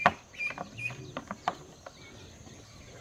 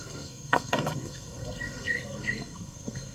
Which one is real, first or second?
first